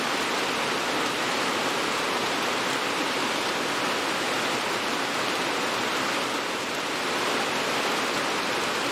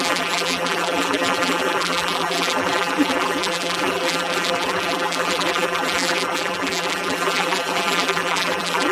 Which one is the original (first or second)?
first